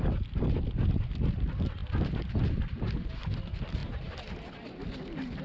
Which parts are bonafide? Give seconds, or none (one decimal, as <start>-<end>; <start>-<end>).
0.0-5.4